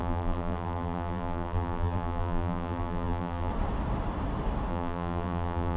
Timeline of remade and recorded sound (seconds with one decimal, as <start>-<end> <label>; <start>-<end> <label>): 0.0-3.5 remade; 3.5-4.7 recorded; 4.7-5.8 remade